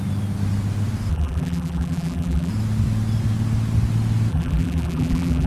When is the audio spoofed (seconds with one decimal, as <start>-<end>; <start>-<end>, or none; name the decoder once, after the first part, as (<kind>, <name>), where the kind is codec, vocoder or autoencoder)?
1.1-2.5 (vocoder, BigVGAN v2); 4.3-5.5